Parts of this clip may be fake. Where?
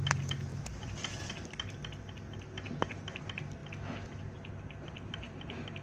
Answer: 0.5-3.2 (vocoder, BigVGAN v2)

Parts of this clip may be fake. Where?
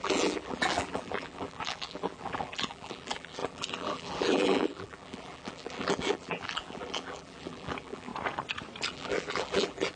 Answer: 0.0-8.1 (vocoder, BigVGAN v2); 8.9-10.0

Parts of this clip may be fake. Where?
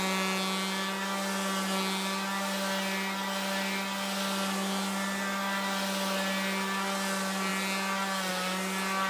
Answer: none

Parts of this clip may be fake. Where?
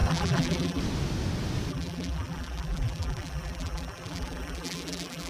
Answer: 0.0-0.8 (vocoder, BigVGAN v2); 1.7-5.3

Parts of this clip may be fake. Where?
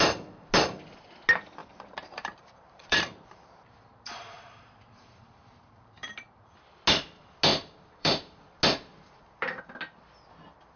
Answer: 1.6-6.5 (vocoder, BigVGAN v2); 7.5-8.4; 8.9-9.6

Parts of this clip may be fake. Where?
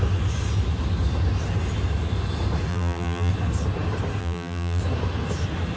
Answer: 2.7-3.3 (vocoder, BigVGAN v2); 4.2-4.8